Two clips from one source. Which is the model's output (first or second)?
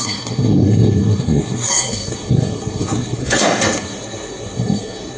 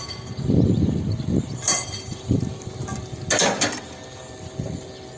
first